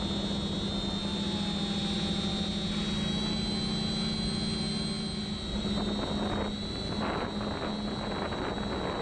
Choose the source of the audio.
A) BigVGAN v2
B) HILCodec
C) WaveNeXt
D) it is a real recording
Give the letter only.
D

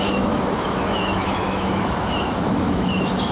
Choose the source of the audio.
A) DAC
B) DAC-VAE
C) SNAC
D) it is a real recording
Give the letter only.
B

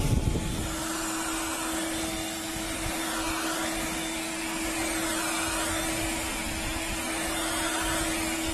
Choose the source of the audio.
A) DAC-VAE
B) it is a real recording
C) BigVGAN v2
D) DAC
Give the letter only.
B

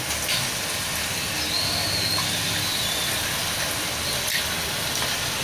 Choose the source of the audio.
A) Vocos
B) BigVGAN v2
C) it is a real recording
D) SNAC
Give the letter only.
C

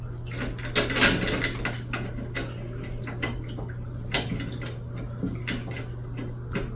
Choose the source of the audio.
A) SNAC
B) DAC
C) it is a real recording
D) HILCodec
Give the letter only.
C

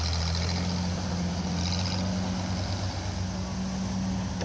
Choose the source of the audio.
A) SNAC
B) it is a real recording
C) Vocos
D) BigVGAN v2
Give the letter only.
B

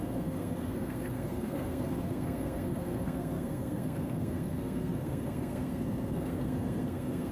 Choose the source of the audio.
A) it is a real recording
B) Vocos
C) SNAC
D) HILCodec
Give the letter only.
C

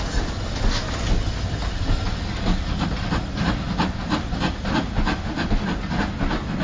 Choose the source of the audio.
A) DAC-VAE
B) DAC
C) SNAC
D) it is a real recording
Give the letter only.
D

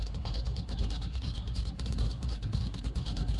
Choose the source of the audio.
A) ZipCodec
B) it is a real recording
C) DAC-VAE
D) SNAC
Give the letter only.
D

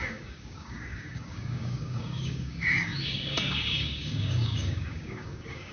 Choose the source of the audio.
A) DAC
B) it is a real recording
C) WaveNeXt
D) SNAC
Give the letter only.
A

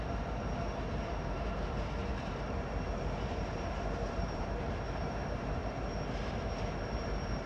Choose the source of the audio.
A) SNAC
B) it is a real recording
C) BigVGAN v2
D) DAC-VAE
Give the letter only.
C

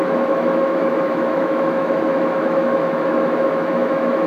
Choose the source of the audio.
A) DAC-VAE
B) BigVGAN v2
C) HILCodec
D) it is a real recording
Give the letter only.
A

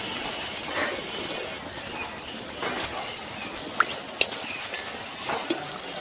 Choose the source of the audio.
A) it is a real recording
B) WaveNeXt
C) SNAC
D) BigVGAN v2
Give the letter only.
A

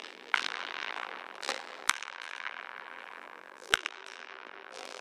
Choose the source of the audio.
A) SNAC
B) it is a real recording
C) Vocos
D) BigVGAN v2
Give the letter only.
D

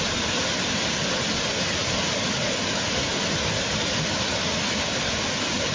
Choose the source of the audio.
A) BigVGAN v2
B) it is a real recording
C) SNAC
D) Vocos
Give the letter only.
B